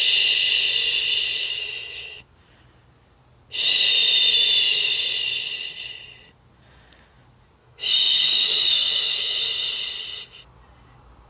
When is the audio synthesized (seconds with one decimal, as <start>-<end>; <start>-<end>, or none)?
1.4-2.2; 7.6-9.4